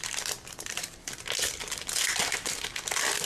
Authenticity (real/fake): fake